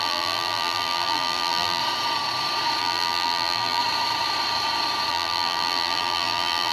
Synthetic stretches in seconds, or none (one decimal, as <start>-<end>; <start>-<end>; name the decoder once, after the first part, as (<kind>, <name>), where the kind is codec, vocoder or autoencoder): 0.0-1.8 (vocoder, BigVGAN v2); 2.8-3.8; 5.1-6.7